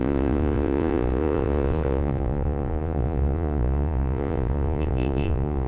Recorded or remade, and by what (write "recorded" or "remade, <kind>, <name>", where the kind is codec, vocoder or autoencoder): remade, vocoder, Vocos